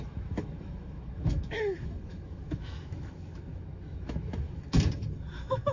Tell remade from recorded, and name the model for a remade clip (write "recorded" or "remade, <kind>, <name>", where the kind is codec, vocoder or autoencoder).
remade, autoencoder, DAC-VAE